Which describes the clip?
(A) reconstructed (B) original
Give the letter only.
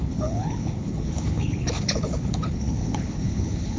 A